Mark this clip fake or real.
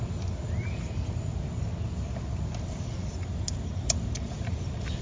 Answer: real